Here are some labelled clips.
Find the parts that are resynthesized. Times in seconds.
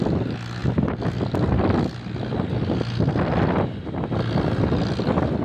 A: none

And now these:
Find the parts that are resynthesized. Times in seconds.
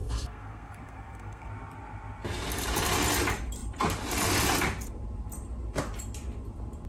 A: 0.0-1.5 (codec, SNAC)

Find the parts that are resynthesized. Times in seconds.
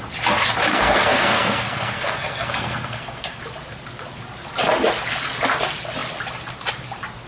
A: 0.7-3.4 (codec, SNAC)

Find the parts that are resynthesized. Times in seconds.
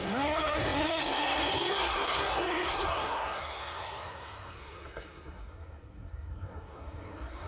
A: 0.0-7.5 (codec, SNAC)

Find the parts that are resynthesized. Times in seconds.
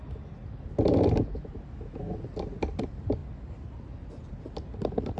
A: none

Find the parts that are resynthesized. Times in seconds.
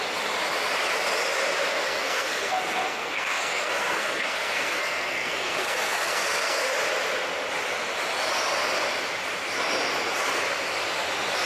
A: 1.7-6.7 (codec, SNAC)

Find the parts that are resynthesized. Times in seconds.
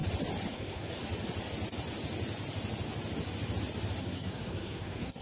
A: 0.5-0.9 (codec, SNAC); 4.0-5.2